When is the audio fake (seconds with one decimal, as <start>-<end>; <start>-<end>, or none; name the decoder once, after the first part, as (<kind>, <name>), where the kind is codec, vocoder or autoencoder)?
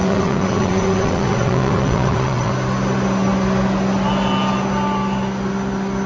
0.0-2.5 (vocoder, WaveNeXt)